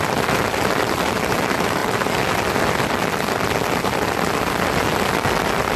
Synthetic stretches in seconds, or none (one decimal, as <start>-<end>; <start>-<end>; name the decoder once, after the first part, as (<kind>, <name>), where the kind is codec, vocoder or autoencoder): none